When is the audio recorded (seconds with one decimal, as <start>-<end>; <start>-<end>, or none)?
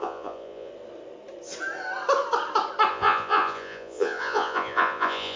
0.7-2.9